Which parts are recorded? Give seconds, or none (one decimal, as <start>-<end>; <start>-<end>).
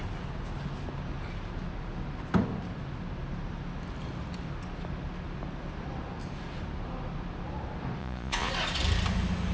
0.0-8.0; 8.5-9.5